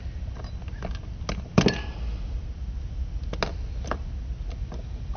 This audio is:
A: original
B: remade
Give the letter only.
A